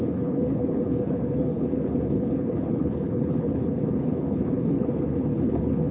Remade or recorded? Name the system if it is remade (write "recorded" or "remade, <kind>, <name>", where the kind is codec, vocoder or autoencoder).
remade, codec, HILCodec